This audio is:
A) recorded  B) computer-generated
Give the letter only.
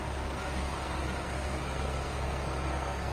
B